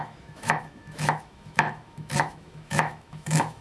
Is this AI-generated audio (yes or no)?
yes